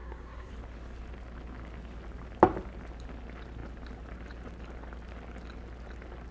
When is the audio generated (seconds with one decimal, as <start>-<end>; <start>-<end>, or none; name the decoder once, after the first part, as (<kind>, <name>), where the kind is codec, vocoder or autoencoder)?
0.0-0.5 (codec, SNAC)

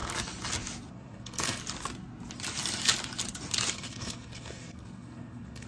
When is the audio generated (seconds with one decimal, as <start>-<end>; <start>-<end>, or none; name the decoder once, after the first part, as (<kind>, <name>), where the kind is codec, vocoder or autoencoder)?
0.9-1.6 (codec, SNAC); 3.7-5.7

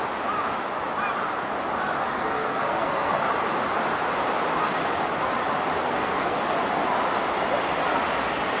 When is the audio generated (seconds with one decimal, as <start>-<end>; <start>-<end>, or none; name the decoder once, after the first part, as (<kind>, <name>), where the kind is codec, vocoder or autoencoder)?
2.0-3.2 (codec, SNAC); 5.8-6.4

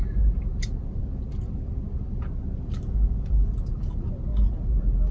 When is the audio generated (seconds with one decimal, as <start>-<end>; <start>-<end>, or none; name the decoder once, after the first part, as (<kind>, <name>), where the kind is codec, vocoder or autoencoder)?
none

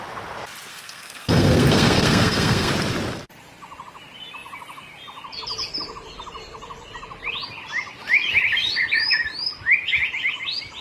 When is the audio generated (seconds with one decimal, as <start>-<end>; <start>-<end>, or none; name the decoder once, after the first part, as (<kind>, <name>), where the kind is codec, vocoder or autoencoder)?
0.7-2.7 (codec, SNAC)

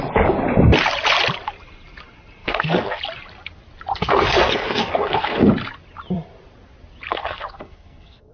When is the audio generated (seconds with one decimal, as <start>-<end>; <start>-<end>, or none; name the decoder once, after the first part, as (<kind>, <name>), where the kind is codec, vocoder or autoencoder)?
2.4-3.0 (codec, SNAC); 3.9-5.5; 7.1-8.3

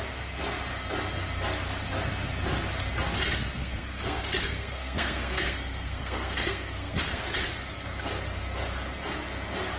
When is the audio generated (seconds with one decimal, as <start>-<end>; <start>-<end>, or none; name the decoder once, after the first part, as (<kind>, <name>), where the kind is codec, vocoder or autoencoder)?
3.6-7.2 (codec, SNAC)

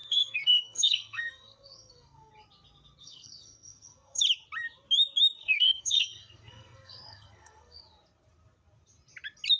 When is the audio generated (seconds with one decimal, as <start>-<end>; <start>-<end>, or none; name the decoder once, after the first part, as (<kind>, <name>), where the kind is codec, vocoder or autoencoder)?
0.0-2.3 (codec, SNAC); 3.0-4.2; 5.4-7.8